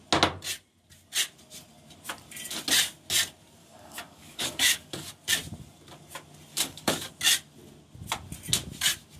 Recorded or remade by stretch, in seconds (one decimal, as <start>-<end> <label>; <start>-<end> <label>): 0.0-3.6 recorded; 3.6-5.1 remade; 5.1-6.5 recorded; 6.5-7.1 remade; 7.1-9.2 recorded